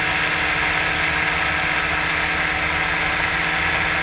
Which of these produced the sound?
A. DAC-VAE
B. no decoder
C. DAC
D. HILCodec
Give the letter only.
B